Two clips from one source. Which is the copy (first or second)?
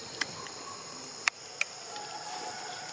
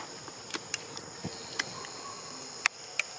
first